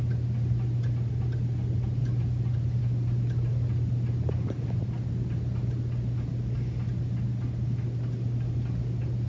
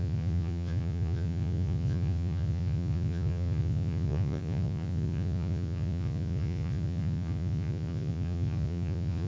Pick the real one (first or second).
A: first